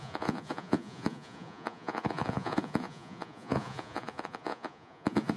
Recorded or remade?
remade